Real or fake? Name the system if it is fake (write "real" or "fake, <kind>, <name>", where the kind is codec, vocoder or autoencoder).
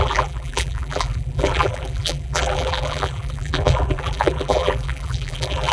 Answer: fake, vocoder, BigVGAN v2